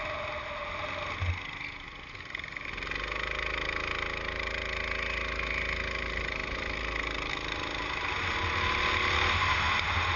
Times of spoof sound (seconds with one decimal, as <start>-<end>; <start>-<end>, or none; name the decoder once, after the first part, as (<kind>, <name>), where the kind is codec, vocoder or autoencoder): none